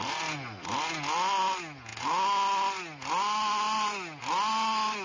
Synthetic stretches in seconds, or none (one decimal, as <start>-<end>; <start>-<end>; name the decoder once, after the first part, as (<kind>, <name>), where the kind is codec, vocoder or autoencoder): none